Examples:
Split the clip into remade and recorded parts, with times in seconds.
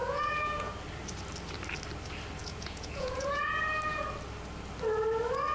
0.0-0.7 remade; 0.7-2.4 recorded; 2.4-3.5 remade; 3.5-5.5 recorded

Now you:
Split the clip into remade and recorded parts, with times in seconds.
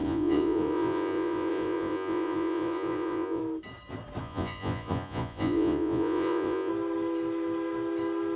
0.0-3.4 remade; 3.4-4.2 recorded; 4.2-6.7 remade; 6.7-8.4 recorded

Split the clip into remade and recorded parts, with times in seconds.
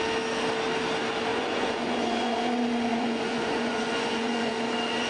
0.0-1.3 recorded; 1.3-2.3 remade; 2.3-2.9 recorded; 2.9-4.5 remade; 4.5-5.1 recorded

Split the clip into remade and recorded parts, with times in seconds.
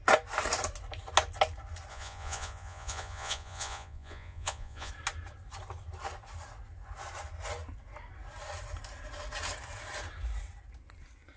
0.0-1.9 recorded; 1.9-4.9 remade; 4.9-11.4 recorded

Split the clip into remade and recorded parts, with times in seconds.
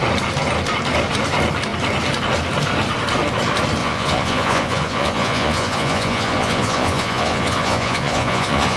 0.0-3.8 recorded; 3.8-8.8 remade